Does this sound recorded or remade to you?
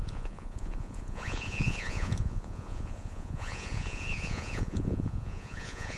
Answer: remade